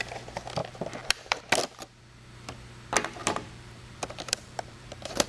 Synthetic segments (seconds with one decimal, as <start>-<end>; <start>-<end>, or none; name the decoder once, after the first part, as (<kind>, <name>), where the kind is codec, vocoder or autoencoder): 0.6-1.4 (vocoder, BigVGAN v2); 3.2-5.3